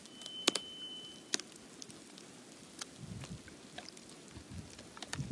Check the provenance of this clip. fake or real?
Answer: real